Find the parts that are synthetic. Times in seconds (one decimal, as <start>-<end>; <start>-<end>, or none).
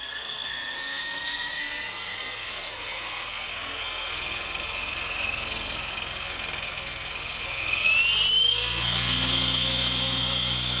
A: 0.0-7.9; 8.5-10.8